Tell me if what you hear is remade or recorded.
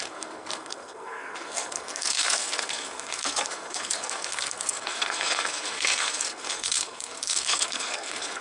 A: remade